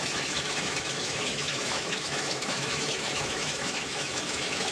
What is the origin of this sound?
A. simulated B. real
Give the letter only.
A